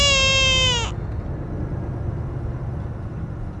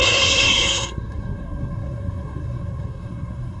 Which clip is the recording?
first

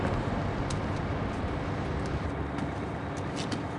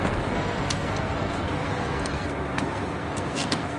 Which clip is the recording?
first